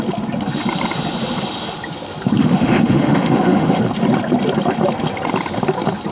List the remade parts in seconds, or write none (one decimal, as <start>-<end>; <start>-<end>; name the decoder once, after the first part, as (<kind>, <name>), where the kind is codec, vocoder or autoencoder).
2.4-3.8 (autoencoder, DAC-VAE)